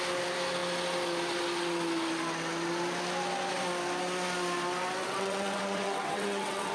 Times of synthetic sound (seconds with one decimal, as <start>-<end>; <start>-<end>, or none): 5.0-6.7